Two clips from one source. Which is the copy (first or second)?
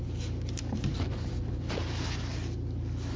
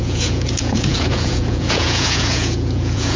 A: second